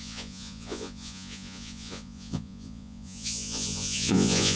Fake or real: fake